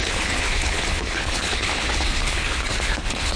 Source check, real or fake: fake